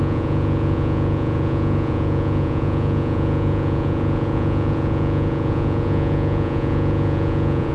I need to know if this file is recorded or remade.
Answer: remade